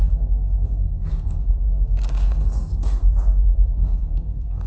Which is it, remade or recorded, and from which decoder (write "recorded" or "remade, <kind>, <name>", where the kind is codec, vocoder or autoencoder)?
remade, codec, SNAC